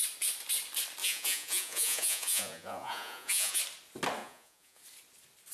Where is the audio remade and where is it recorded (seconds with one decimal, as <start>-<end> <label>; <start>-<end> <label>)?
0.0-1.0 recorded; 1.0-3.6 remade; 3.6-4.2 recorded; 4.2-4.8 remade; 4.8-5.5 recorded